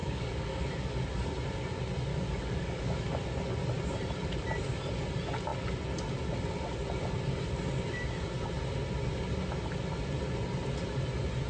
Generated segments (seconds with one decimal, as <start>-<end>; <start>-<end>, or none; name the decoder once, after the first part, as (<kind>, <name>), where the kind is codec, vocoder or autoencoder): 0.0-0.6 (codec, DAC); 2.1-3.1